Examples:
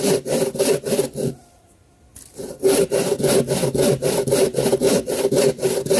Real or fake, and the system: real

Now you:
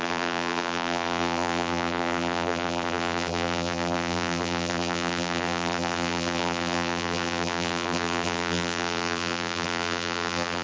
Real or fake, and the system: fake, vocoder, BigVGAN v2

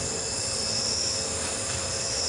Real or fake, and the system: real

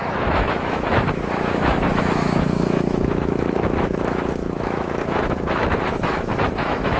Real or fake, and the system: fake, autoencoder, DAC-VAE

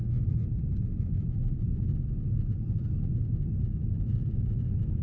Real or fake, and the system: real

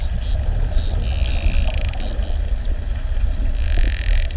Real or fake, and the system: real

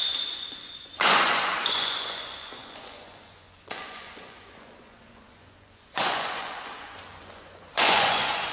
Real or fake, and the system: fake, vocoder, Vocos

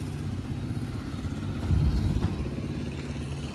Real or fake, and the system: real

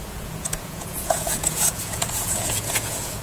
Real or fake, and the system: fake, vocoder, Vocos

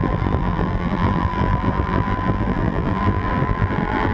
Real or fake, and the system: fake, vocoder, BigVGAN v2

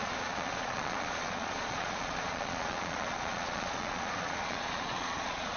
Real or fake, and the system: fake, vocoder, Vocos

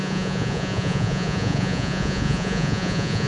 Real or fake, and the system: fake, vocoder, Vocos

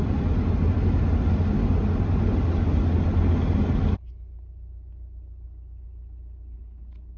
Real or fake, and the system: real